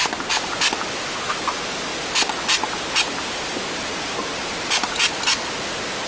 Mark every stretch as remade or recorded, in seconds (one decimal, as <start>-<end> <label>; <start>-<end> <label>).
0.0-6.1 recorded